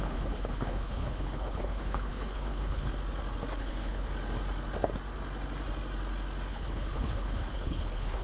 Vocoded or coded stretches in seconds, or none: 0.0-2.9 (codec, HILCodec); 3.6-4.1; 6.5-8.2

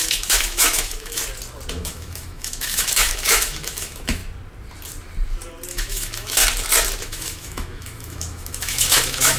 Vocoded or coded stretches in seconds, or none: 0.0-1.2 (autoencoder, DAC-VAE); 1.7-4.2; 5.7-6.4; 7.0-9.4

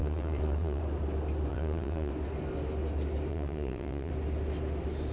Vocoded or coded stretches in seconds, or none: 0.0-0.8 (vocoder, WaveNeXt); 1.5-2.1; 3.3-4.1

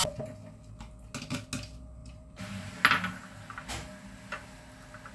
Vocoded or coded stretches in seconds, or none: 2.0-2.7 (vocoder, BigVGAN v2)

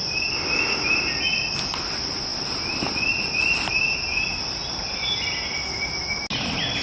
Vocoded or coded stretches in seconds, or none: none

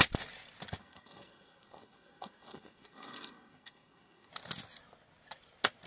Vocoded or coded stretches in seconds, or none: 0.8-4.3 (codec, SNAC)